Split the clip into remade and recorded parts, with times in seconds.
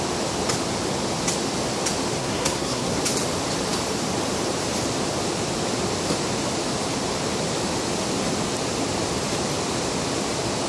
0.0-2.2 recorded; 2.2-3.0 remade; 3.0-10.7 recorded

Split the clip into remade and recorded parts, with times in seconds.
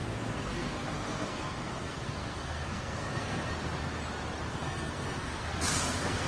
0.0-3.5 remade; 3.5-4.5 recorded; 4.5-6.3 remade